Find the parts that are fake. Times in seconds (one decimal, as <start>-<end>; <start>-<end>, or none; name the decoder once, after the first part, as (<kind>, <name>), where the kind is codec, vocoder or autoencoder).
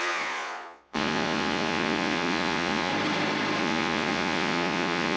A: 0.0-2.9 (vocoder, Vocos); 3.6-5.2